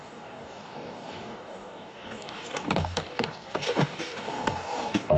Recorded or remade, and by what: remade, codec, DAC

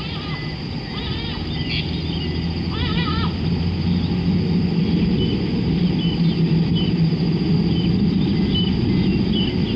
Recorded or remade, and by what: recorded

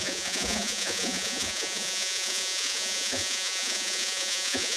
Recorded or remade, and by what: remade, vocoder, Vocos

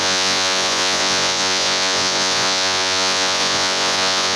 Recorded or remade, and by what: remade, vocoder, Vocos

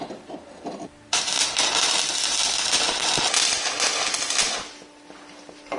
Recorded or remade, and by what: recorded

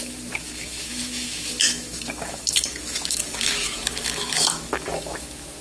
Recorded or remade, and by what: remade, autoencoder, DAC-VAE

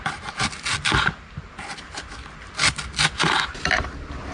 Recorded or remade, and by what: recorded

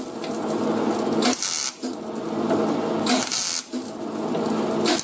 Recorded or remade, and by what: recorded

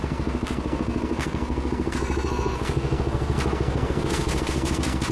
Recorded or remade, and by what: remade, codec, SNAC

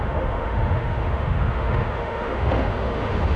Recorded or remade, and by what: remade, autoencoder, DAC-VAE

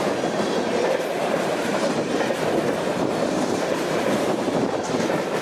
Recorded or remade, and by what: remade, vocoder, BigVGAN v2